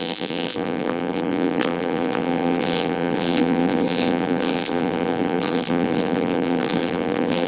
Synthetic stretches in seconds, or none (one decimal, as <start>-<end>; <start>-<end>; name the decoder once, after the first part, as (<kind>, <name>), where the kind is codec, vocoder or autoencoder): 0.0-7.5 (vocoder, BigVGAN v2)